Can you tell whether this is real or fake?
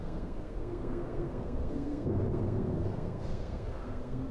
fake